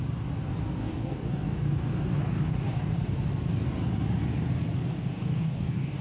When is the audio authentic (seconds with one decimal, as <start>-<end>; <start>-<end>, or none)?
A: 0.0-0.8; 2.9-4.9